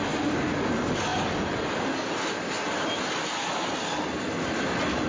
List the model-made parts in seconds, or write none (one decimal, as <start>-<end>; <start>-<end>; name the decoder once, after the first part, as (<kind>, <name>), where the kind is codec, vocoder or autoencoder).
none

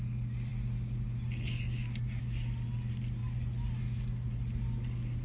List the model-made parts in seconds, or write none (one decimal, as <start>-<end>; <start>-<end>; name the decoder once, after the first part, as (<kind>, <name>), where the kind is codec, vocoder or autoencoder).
none